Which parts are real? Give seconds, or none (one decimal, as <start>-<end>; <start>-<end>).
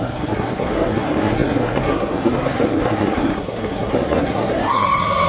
none